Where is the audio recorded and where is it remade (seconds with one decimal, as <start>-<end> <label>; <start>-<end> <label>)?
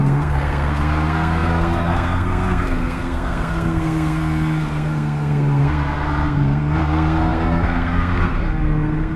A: 0.0-9.2 remade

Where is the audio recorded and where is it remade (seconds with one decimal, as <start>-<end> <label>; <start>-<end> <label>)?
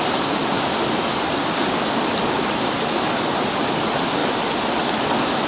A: 0.0-5.5 recorded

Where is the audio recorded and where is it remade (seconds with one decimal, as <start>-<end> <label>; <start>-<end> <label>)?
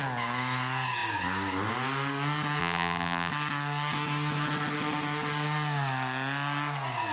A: 0.0-2.6 recorded; 2.6-3.3 remade; 3.3-7.1 recorded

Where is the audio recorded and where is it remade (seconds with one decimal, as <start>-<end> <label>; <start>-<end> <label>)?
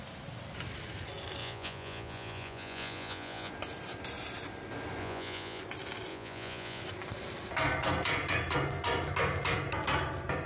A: 0.0-1.4 recorded; 1.4-3.5 remade; 3.5-5.0 recorded; 5.0-5.6 remade; 5.6-6.1 recorded; 6.1-6.8 remade; 6.8-10.5 recorded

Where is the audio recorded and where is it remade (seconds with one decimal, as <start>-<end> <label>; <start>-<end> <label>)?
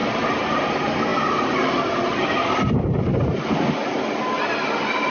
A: 0.0-5.1 recorded